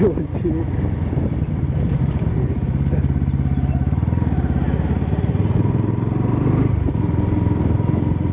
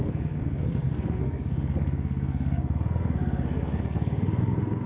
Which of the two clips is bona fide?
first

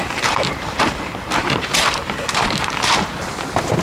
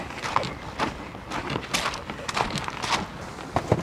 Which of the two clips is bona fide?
second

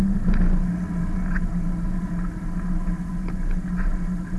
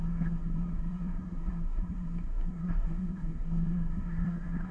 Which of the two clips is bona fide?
first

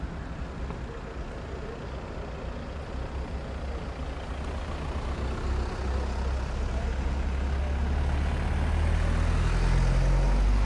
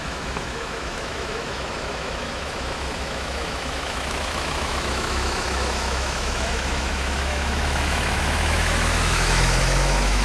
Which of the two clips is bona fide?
first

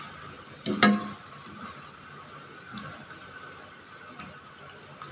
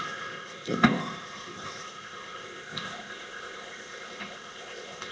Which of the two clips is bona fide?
first